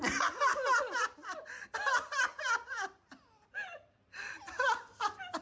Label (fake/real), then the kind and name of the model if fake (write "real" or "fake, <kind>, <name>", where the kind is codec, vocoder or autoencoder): real